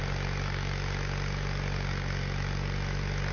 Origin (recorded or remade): recorded